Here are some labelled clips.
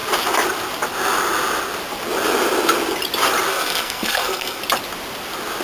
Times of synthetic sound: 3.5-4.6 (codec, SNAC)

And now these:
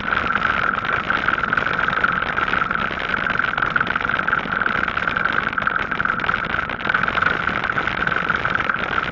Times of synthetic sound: none

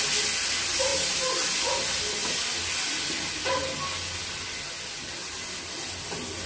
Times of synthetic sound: none

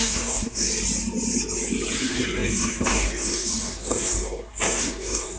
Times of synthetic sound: 0.0-0.7 (codec, SNAC); 2.0-5.4